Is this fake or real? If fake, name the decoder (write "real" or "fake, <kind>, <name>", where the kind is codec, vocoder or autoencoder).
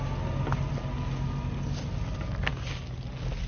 real